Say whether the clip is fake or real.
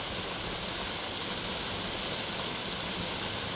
real